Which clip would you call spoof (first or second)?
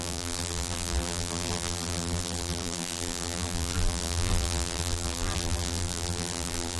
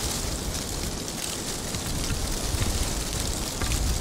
first